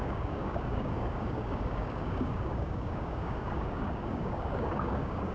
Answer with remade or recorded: remade